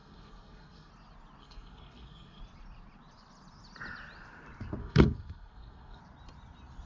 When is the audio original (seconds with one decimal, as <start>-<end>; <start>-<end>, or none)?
0.9-1.4; 2.4-4.8; 6.0-6.9